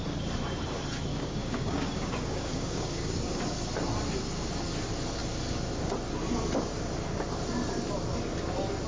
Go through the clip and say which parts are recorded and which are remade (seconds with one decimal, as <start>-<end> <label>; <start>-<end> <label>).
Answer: 0.0-1.1 recorded; 1.1-3.4 remade; 3.4-8.9 recorded